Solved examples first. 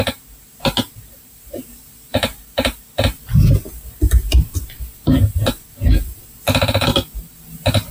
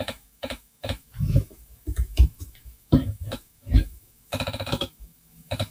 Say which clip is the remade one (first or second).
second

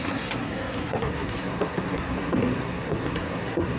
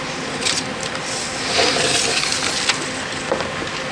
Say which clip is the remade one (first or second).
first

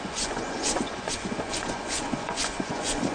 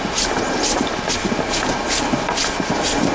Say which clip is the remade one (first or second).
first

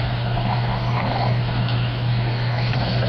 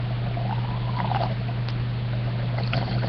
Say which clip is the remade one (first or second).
first